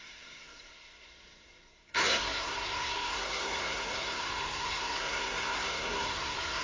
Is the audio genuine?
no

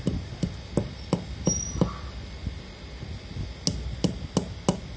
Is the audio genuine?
yes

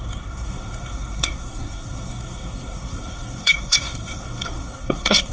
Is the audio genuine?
no